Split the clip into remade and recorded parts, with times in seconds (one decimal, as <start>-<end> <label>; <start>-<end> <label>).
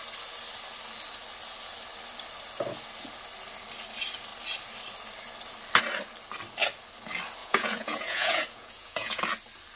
0.0-7.4 recorded; 7.4-9.2 remade; 9.2-9.8 recorded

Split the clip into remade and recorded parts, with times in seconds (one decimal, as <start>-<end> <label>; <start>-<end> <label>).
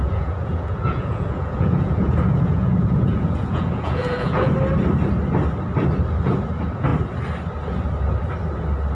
0.0-4.5 remade; 4.5-8.9 recorded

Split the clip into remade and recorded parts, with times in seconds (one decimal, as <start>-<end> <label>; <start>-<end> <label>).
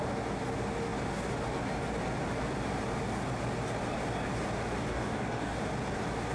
0.0-4.9 recorded; 4.9-5.6 remade; 5.6-6.3 recorded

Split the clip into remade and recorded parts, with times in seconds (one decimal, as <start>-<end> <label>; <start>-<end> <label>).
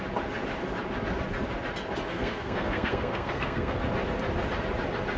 0.0-2.1 recorded; 2.1-3.8 remade; 3.8-5.2 recorded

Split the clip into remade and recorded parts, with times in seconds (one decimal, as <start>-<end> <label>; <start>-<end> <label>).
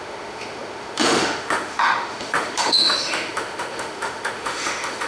0.0-5.1 remade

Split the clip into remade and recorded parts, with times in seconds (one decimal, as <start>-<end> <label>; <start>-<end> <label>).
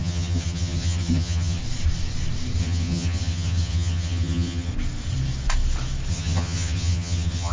0.0-1.6 remade; 1.6-2.6 recorded; 2.6-4.7 remade; 4.7-6.1 recorded; 6.1-7.5 remade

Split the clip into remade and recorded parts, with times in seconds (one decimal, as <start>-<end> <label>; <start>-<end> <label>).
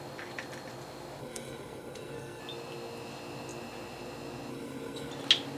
0.0-1.2 recorded; 1.2-2.4 remade; 2.4-4.5 recorded; 4.5-5.1 remade; 5.1-5.6 recorded